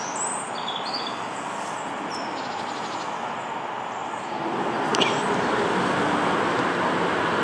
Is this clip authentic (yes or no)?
yes